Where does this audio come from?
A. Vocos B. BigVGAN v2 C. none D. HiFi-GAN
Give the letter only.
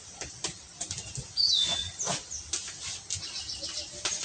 C